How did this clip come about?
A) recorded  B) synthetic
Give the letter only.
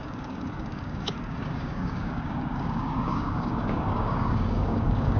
B